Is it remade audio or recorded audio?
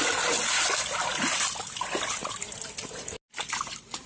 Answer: recorded